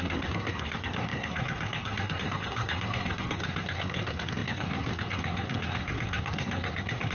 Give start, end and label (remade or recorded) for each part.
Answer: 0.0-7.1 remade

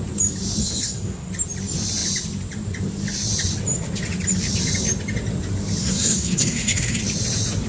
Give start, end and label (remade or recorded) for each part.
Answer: 0.0-0.6 recorded; 0.6-1.3 remade; 1.3-5.8 recorded; 5.8-7.0 remade; 7.0-7.7 recorded

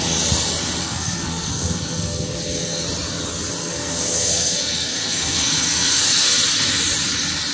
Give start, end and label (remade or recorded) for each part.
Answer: 0.0-0.8 recorded; 0.8-2.8 remade; 2.8-3.6 recorded; 3.6-6.4 remade; 6.4-7.5 recorded

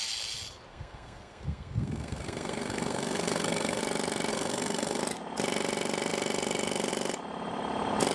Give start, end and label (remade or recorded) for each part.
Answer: 0.0-0.7 recorded; 0.7-3.8 remade; 3.8-4.3 recorded; 4.3-5.0 remade; 5.0-8.1 recorded

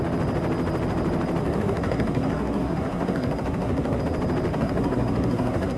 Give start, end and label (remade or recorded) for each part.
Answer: 0.0-1.4 recorded; 1.4-4.0 remade; 4.0-4.5 recorded; 4.5-5.8 remade